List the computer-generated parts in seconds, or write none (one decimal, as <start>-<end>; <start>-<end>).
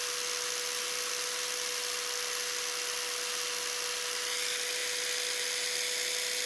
none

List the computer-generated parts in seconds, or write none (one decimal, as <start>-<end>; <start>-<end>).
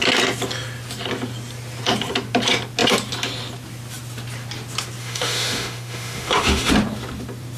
5.0-6.7